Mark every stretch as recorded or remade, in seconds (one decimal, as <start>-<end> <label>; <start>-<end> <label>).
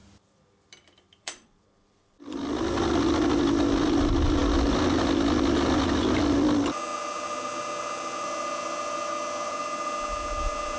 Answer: 0.0-3.0 remade; 3.0-10.8 recorded